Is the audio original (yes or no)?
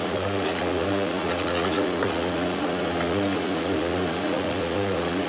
no